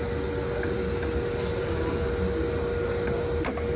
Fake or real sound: real